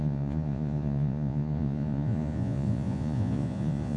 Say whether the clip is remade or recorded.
remade